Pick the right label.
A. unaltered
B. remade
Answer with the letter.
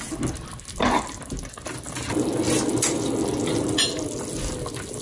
A